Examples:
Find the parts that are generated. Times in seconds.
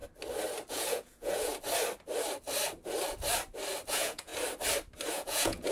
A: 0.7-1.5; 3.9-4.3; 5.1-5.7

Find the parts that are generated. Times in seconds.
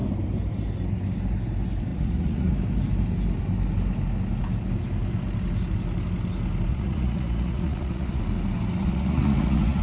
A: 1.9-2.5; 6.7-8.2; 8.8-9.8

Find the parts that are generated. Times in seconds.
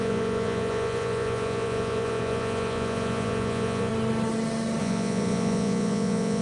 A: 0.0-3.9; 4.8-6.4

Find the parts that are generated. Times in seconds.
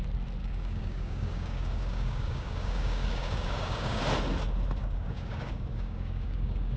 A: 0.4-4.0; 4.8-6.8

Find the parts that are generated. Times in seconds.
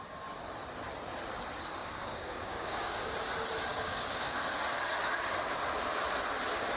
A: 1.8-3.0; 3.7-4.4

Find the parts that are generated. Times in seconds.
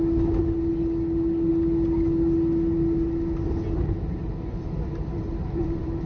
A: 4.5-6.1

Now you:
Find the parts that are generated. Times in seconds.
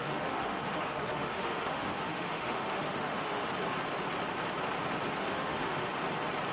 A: 0.0-3.5; 5.2-5.9